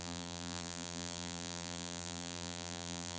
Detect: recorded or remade remade